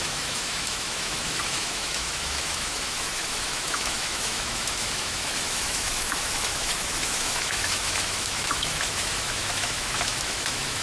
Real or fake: fake